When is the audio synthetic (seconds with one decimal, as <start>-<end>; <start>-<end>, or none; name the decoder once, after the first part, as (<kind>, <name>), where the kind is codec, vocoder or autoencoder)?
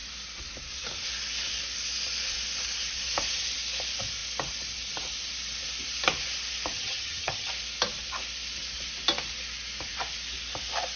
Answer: 6.7-7.5 (vocoder, HiFi-GAN)